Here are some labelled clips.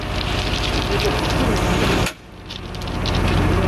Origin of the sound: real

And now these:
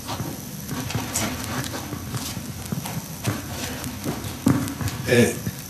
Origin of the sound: fake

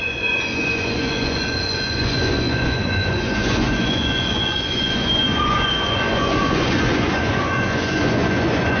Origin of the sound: fake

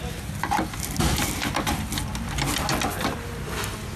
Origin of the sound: real